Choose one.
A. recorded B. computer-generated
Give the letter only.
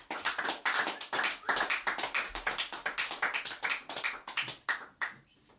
A